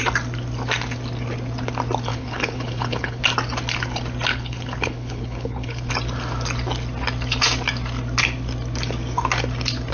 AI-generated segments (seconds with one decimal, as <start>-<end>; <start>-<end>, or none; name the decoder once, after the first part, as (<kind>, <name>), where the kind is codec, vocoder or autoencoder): 2.1-3.2 (codec, HILCodec); 4.3-5.9